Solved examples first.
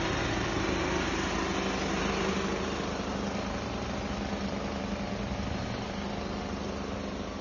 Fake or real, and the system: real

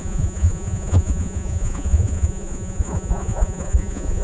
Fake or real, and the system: fake, vocoder, Vocos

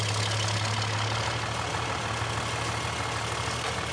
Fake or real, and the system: real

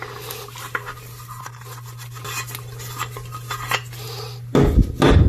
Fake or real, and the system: real